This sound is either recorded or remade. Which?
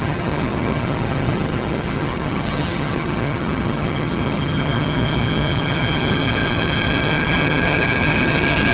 remade